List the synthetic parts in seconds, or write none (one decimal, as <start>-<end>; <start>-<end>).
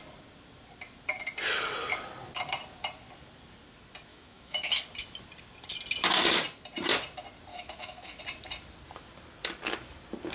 4.1-4.8; 7.5-8.2